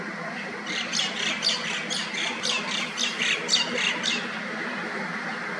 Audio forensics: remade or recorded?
recorded